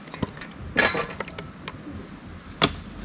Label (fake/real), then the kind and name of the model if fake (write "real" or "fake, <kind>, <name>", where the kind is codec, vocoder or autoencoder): real